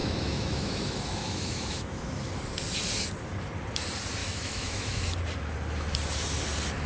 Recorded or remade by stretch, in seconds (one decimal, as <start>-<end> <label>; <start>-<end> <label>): 0.0-2.3 remade; 2.3-4.2 recorded; 4.2-5.0 remade; 5.0-6.9 recorded